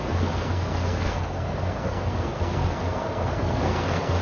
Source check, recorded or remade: remade